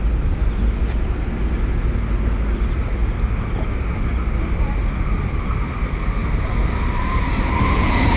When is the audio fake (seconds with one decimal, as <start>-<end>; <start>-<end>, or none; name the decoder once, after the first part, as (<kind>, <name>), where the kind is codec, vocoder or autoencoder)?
6.2-7.6 (vocoder, BigVGAN v2)